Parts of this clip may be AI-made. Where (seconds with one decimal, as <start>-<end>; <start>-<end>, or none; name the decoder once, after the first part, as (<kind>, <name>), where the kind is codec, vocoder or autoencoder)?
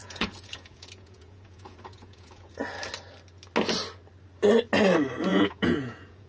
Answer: 0.0-2.6 (vocoder, Vocos); 5.3-6.3